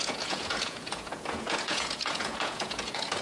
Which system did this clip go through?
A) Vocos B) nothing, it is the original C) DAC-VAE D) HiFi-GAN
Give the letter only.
A